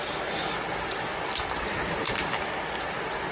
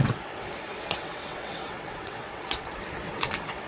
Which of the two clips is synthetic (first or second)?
second